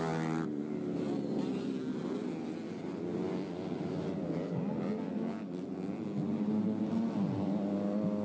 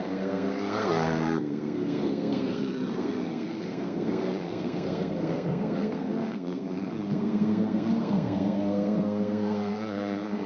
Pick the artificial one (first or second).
second